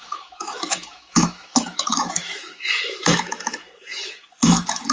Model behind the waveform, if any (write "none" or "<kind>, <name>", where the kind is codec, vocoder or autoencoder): autoencoder, DAC-VAE